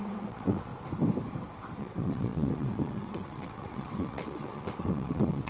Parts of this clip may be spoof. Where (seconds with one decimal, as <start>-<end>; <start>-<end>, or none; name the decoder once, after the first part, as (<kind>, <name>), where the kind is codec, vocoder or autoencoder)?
0.0-0.7 (vocoder, WaveNeXt); 1.8-5.5